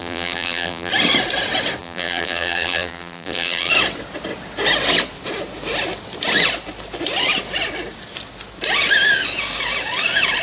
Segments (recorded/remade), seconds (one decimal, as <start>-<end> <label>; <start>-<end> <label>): 0.0-0.9 remade; 0.9-1.8 recorded; 1.8-3.7 remade; 3.7-10.4 recorded